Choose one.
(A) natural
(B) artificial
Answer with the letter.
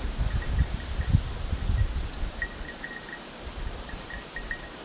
B